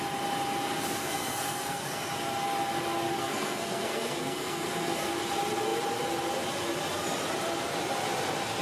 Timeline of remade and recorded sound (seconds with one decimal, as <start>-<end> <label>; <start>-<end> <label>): 0.0-1.0 recorded; 1.0-2.1 remade; 2.1-3.2 recorded; 3.2-5.1 remade; 5.1-8.6 recorded

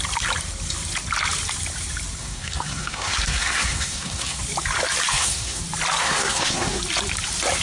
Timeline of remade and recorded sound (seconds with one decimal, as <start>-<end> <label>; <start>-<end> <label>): 0.0-2.2 recorded; 2.2-4.4 remade; 4.4-5.1 recorded; 5.1-5.6 remade; 5.6-6.0 recorded; 6.0-6.8 remade; 6.8-7.6 recorded

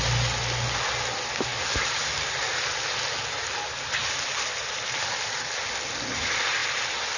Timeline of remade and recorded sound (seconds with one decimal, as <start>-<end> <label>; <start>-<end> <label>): 0.0-7.2 recorded

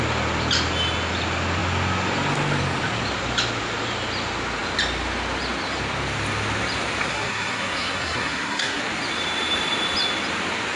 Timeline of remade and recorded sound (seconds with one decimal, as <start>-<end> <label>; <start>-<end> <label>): 0.0-7.1 recorded; 7.1-8.8 remade; 8.8-10.8 recorded

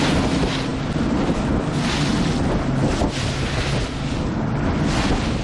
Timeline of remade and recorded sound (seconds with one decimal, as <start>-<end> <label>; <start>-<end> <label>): 0.0-5.4 recorded

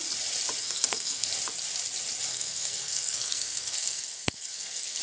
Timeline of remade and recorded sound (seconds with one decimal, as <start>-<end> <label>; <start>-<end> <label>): 0.0-0.6 recorded; 0.6-1.3 remade; 1.3-2.3 recorded; 2.3-5.0 remade

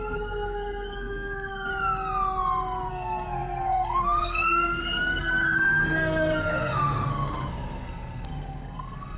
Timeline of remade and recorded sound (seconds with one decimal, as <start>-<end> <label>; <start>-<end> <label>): 0.0-1.7 remade; 1.7-2.9 recorded; 2.9-9.2 remade

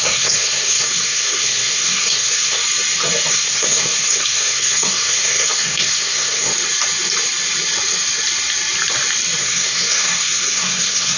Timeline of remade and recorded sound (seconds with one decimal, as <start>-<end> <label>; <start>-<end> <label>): 0.0-2.6 remade; 2.6-3.3 recorded; 3.3-6.5 remade; 6.5-9.4 recorded; 9.4-11.2 remade